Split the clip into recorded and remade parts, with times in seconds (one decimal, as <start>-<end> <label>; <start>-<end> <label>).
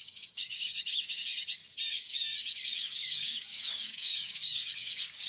0.0-1.3 remade; 1.3-1.9 recorded; 1.9-5.3 remade